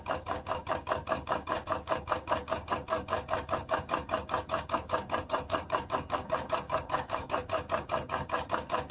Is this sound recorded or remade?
remade